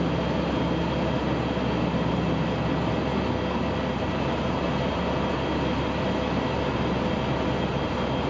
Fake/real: real